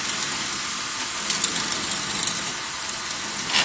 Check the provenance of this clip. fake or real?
real